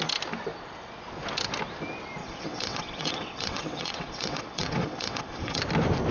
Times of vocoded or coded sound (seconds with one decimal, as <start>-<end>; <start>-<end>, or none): 2.2-5.6